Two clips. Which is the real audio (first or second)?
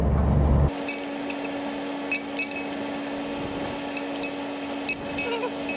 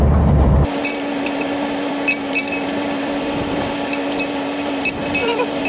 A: first